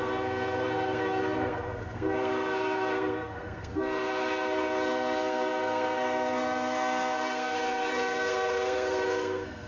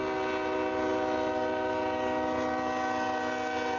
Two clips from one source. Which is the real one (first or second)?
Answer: second